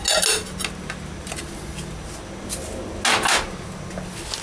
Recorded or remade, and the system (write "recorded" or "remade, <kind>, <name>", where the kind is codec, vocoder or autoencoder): recorded